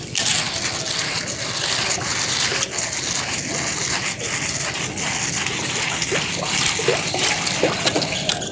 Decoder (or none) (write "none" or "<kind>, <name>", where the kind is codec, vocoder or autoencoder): none